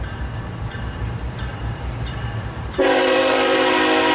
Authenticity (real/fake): fake